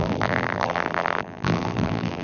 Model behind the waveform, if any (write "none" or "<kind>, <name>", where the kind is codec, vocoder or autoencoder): vocoder, BigVGAN v2